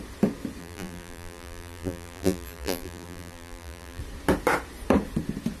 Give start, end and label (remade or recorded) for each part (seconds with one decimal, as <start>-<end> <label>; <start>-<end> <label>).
0.0-0.6 recorded; 0.6-4.0 remade; 4.0-5.6 recorded